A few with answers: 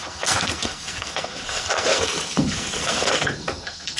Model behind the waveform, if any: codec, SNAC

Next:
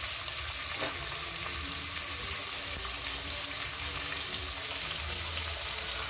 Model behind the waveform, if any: none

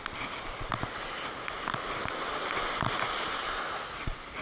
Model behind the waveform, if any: none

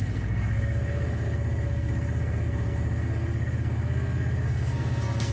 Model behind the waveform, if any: codec, SNAC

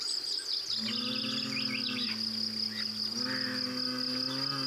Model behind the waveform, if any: none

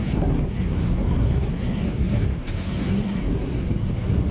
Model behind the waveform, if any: codec, SNAC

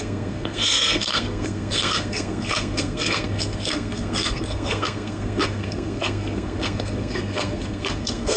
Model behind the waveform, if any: codec, SNAC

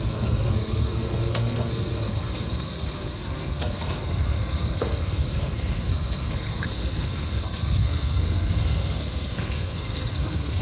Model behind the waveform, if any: codec, SNAC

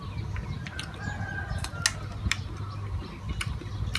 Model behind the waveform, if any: none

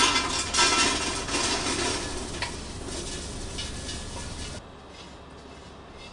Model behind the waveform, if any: none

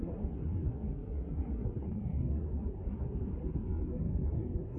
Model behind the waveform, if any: codec, SNAC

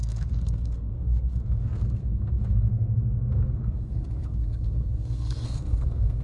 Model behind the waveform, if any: codec, SNAC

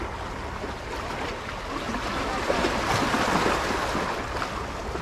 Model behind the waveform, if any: none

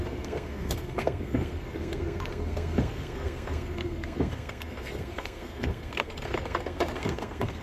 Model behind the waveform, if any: codec, SNAC